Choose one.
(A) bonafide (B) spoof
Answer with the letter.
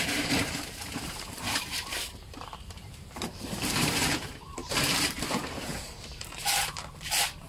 B